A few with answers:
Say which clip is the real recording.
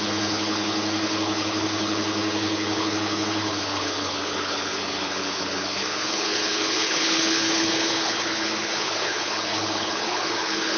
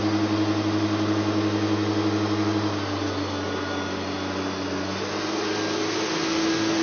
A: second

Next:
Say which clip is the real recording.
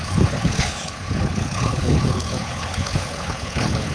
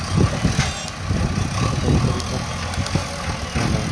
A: second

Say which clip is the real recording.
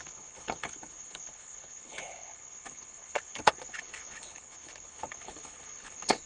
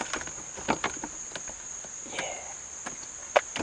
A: second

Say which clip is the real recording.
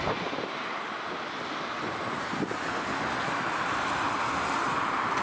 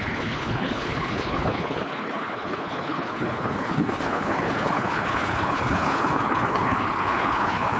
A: first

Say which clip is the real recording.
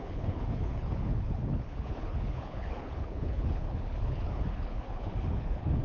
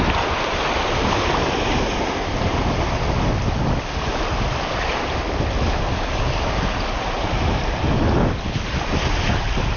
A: second